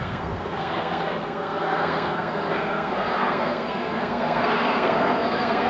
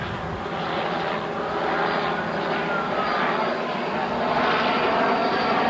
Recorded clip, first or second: second